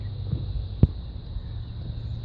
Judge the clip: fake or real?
real